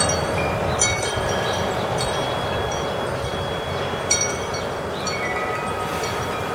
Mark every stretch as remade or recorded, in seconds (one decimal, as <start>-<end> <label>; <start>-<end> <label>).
0.0-0.9 remade; 0.9-4.1 recorded; 4.1-6.5 remade